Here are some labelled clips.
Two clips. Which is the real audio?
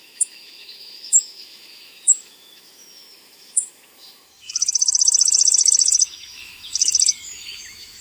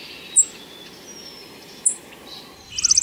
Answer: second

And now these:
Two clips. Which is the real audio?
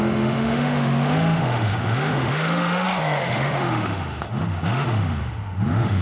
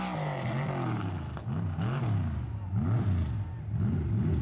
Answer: second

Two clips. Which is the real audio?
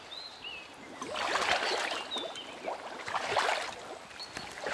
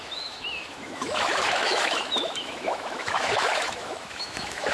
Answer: first